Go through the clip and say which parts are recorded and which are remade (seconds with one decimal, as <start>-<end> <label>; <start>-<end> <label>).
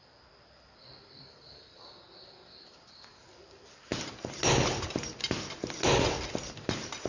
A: 0.0-3.9 remade; 3.9-6.3 recorded; 6.3-7.1 remade